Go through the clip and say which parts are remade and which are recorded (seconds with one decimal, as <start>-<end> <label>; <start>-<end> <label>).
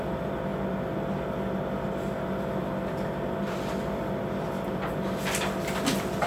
0.0-6.3 recorded